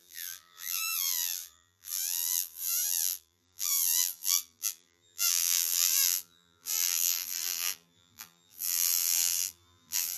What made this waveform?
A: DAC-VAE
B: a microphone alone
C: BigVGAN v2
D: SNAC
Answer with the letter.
C